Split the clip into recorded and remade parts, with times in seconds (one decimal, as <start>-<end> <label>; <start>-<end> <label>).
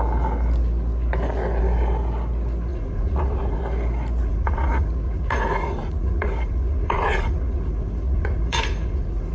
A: 0.0-2.7 recorded; 2.7-3.6 remade; 3.6-4.2 recorded; 4.2-9.3 remade